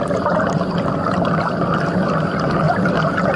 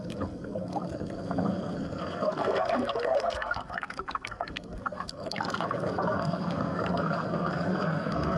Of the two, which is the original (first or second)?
first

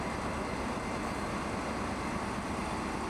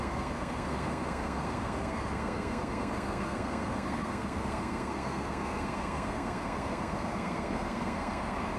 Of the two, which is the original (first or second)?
first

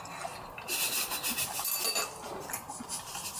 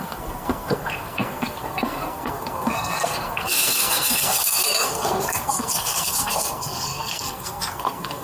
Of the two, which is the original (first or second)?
first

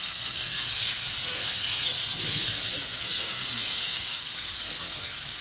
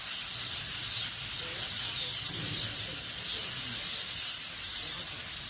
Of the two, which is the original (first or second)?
second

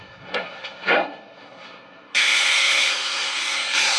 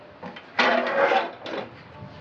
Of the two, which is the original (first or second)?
second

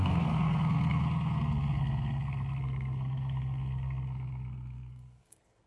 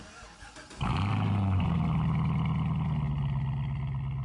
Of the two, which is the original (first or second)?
second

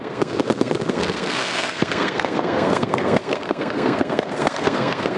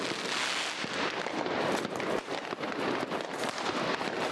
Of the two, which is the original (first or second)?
second